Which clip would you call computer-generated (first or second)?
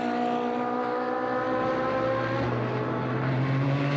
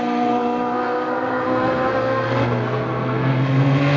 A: second